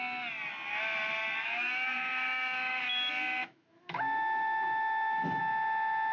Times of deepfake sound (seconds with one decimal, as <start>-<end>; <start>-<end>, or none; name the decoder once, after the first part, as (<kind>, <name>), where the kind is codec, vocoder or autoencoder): 1.4-2.8 (autoencoder, DAC-VAE); 3.4-5.4